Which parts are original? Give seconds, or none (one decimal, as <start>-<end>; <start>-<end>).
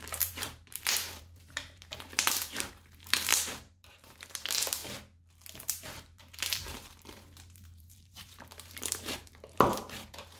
4.8-5.6